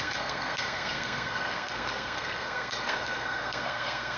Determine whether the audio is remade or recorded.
remade